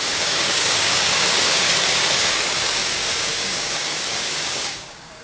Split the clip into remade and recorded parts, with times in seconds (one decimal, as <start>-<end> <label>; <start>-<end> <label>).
0.0-5.2 remade